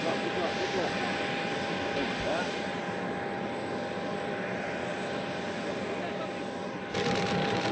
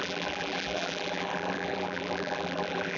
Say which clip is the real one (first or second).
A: first